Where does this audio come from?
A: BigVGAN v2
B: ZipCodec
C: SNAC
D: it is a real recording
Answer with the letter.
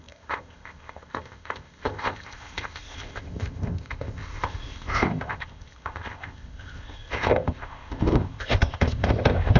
B